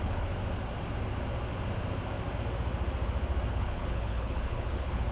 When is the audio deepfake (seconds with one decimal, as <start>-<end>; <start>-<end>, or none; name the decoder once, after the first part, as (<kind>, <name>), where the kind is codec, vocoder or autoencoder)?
0.0-0.4 (codec, HILCodec); 3.5-5.1